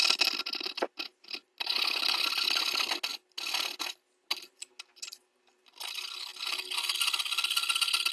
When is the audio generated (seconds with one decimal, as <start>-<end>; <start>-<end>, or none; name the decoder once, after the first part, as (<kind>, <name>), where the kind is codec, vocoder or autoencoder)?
none